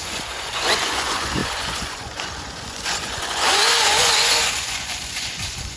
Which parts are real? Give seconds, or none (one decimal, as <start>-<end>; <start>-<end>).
none